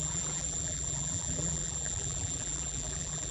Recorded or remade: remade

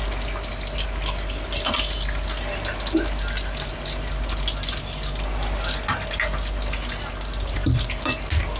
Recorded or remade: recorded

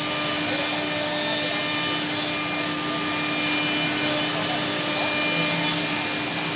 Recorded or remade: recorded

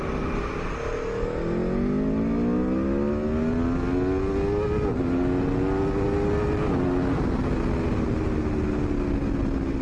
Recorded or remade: recorded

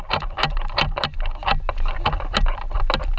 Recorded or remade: recorded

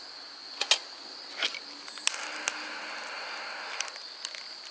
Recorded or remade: recorded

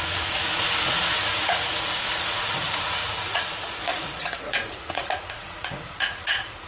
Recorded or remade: remade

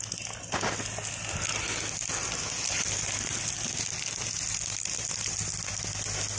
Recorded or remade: recorded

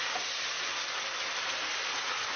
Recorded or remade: recorded